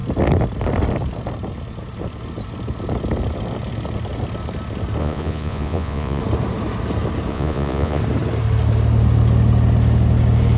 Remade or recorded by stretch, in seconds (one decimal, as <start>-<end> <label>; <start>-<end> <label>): 0.0-5.0 recorded; 5.0-6.2 remade; 6.2-7.3 recorded; 7.3-8.0 remade; 8.0-10.6 recorded